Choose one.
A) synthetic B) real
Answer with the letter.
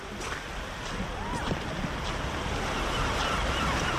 B